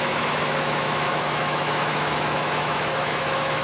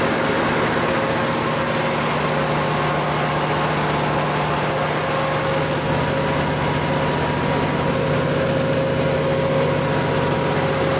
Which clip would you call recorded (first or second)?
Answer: second